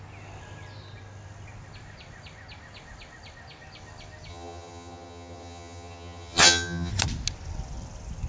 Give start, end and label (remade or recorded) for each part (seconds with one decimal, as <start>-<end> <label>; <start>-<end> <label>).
0.0-4.3 recorded; 4.3-6.9 remade; 6.9-8.3 recorded